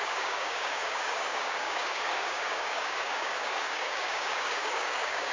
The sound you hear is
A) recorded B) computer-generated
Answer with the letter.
B